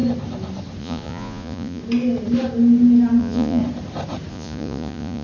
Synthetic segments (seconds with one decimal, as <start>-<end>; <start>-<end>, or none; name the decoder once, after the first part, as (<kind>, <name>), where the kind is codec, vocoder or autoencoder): 0.8-1.8 (vocoder, Vocos); 3.2-3.6; 4.3-5.2